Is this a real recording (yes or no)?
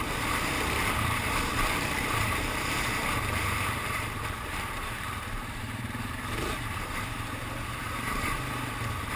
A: no